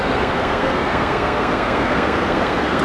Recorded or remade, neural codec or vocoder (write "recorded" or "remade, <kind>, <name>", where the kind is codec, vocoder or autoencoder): remade, codec, SNAC